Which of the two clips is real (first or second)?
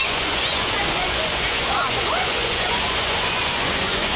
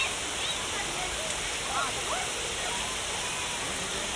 second